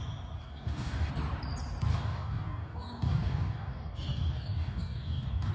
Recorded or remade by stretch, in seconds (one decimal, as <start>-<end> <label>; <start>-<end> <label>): 0.0-0.4 recorded; 0.4-1.1 remade; 1.1-1.9 recorded; 1.9-5.5 remade